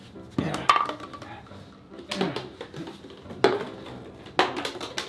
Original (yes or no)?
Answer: yes